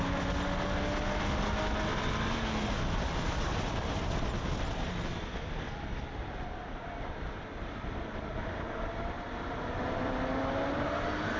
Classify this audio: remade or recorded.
recorded